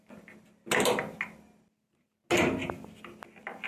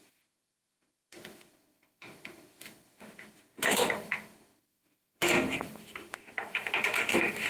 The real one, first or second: first